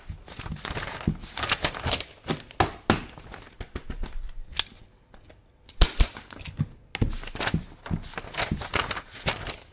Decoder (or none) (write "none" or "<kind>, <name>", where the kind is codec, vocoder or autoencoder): none